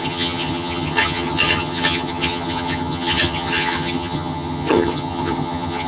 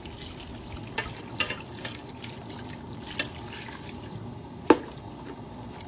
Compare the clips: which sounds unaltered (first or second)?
second